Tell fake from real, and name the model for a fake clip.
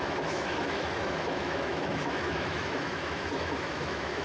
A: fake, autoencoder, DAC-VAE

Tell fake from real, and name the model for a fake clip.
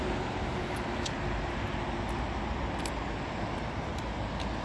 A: real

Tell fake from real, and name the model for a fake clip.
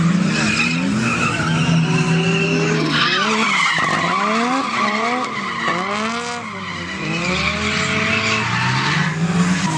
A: real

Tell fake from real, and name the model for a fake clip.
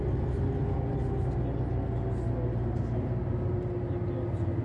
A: real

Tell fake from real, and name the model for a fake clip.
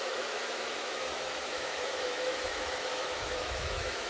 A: fake, autoencoder, DAC-VAE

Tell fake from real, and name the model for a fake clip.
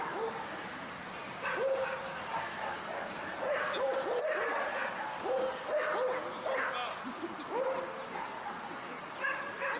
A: real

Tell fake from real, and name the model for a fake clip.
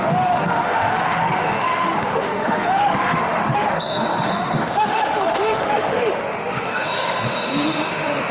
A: fake, autoencoder, DAC-VAE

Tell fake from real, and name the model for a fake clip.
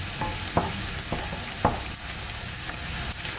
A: real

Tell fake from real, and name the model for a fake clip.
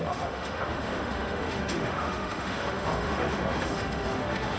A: fake, autoencoder, DAC-VAE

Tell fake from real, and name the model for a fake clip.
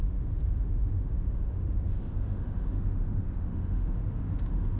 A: fake, autoencoder, DAC-VAE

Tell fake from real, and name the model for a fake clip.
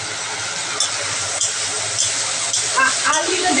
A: real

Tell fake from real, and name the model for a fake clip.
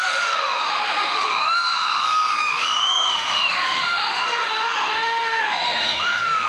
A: fake, autoencoder, DAC-VAE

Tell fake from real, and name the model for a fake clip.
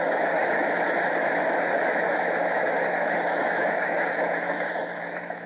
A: fake, autoencoder, DAC-VAE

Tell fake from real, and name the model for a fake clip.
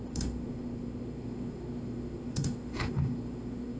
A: fake, autoencoder, DAC-VAE